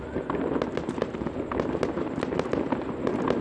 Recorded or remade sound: recorded